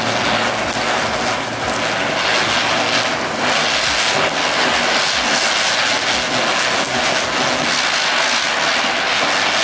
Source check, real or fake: real